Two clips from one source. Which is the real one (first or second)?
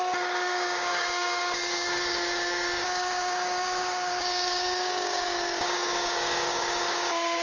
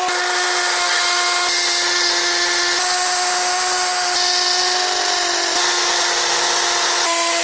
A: second